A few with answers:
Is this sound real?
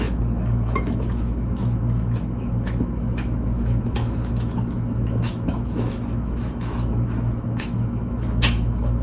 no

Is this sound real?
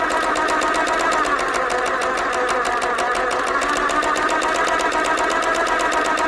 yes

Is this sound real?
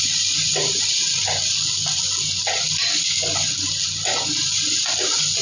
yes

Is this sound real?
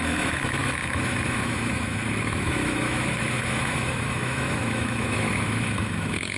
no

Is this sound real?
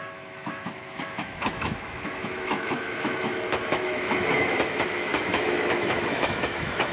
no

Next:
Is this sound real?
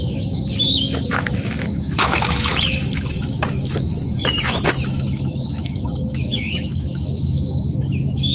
no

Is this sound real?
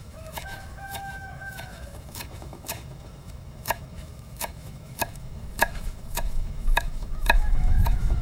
no